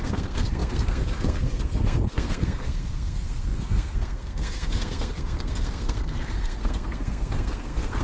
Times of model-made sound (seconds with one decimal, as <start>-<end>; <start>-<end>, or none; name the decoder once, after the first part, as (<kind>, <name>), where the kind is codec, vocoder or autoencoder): 0.0-8.0 (codec, SNAC)